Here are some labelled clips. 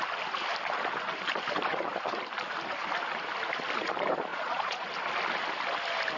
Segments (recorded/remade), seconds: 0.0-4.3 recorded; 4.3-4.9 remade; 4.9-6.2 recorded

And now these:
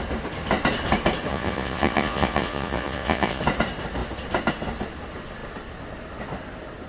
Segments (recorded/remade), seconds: 0.0-1.3 recorded; 1.3-3.4 remade; 3.4-6.9 recorded

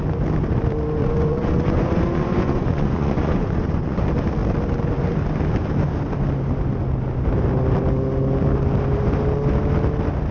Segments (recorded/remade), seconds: 0.0-1.0 recorded; 1.0-4.0 remade; 4.0-10.3 recorded

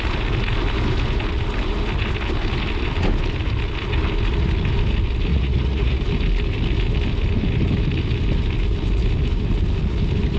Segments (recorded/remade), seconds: 0.0-5.3 recorded; 5.3-6.0 remade; 6.0-10.4 recorded

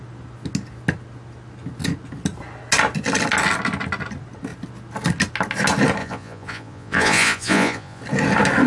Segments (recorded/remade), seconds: 0.0-6.0 recorded; 6.0-8.0 remade; 8.0-8.7 recorded

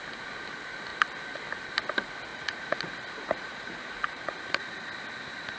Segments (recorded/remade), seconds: 0.0-2.3 recorded; 2.3-4.8 remade; 4.8-5.6 recorded